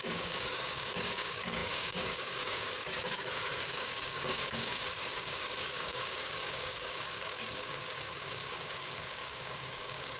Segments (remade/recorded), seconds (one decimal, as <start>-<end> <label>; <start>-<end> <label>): 0.0-10.2 remade